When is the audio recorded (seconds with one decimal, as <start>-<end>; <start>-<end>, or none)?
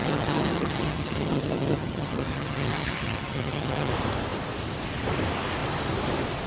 3.9-6.5